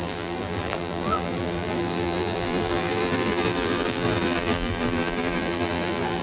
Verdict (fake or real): fake